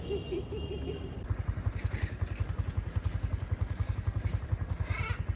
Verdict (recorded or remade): recorded